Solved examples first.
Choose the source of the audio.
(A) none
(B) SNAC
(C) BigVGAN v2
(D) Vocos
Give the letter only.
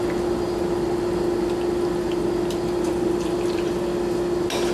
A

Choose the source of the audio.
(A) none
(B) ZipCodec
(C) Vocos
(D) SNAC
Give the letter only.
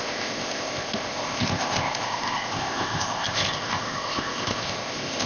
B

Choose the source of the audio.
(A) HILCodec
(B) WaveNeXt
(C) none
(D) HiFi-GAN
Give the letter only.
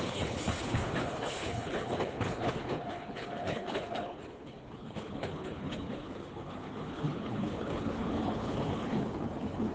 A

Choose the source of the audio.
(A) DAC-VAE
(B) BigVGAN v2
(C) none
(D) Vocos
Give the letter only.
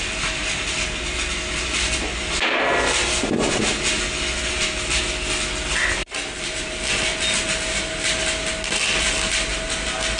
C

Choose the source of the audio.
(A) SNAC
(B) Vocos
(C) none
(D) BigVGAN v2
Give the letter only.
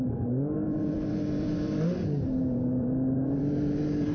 D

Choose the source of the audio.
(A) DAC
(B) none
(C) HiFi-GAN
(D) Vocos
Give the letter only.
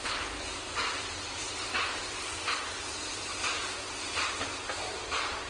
B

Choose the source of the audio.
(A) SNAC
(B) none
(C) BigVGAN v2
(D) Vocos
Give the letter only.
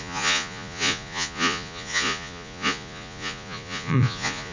D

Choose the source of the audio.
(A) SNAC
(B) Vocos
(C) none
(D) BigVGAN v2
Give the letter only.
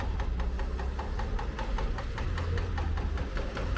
C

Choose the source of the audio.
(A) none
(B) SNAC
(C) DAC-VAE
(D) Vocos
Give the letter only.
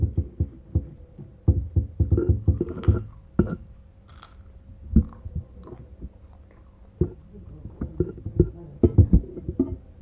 A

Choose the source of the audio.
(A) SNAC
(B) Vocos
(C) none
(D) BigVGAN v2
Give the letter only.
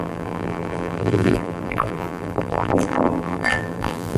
D